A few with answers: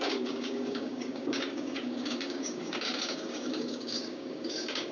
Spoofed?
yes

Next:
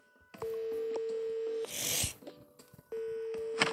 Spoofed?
no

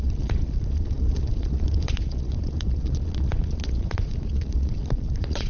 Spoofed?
yes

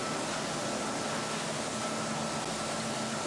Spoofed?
no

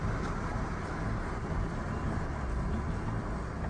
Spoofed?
no